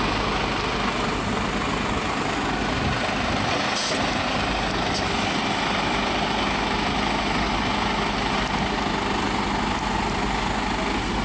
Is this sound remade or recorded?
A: recorded